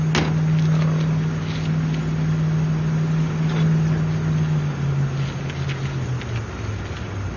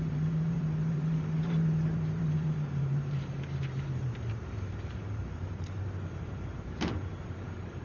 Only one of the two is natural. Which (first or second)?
first